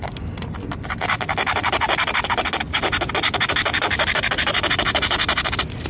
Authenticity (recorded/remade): recorded